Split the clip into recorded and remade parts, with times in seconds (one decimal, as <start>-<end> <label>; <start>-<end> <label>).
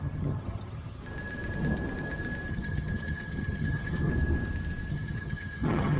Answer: 0.0-1.0 remade; 1.0-2.5 recorded; 2.5-4.1 remade; 4.1-4.9 recorded; 4.9-6.0 remade